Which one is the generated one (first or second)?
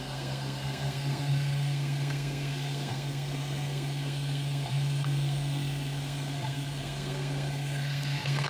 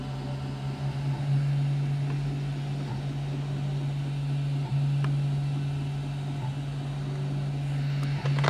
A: first